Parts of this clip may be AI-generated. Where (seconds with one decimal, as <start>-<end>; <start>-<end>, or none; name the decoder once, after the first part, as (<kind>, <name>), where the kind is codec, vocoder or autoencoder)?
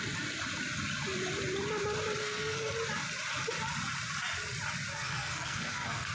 2.2-2.7 (codec, SNAC); 4.9-6.1